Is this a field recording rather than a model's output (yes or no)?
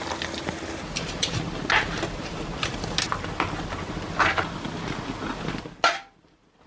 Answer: yes